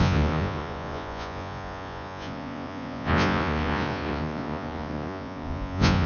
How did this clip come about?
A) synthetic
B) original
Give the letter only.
A